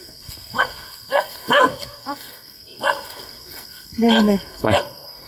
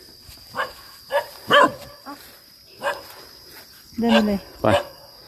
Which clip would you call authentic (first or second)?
second